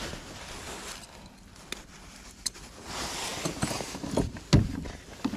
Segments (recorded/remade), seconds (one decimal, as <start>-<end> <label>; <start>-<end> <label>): 0.0-5.4 recorded